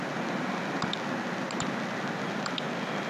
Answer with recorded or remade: recorded